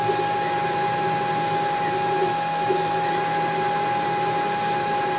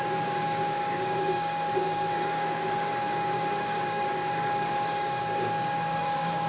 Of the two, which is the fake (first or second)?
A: second